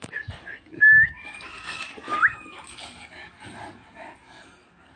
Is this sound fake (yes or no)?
yes